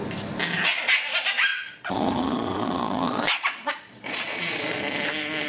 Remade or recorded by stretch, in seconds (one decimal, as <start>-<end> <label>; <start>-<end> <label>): 0.0-1.5 recorded; 1.5-4.8 remade; 4.8-5.5 recorded